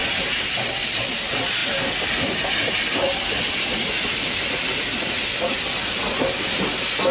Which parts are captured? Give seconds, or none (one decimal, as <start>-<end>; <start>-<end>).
0.0-7.1